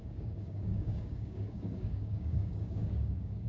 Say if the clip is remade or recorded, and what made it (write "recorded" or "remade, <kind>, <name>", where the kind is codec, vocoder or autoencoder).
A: remade, codec, DAC